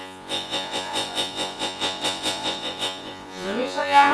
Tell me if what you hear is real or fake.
fake